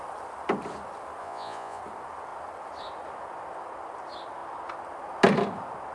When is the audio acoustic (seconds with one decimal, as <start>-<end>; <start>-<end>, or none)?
0.0-1.2; 1.8-5.9